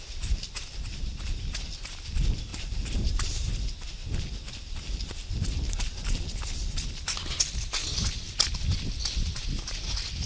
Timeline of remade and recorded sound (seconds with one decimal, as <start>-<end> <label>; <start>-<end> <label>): 0.0-2.5 recorded; 2.5-3.5 remade; 3.5-10.3 recorded